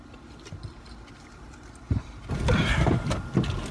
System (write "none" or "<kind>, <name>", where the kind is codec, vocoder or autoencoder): vocoder, BigVGAN v2